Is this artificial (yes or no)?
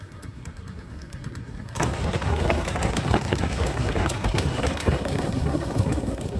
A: yes